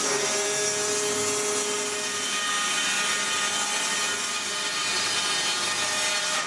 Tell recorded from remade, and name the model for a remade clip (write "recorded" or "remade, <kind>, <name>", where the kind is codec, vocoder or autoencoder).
recorded